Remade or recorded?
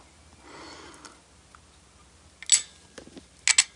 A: recorded